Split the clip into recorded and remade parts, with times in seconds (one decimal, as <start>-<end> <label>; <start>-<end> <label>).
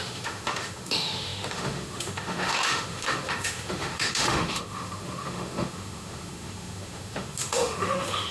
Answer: 0.0-8.3 remade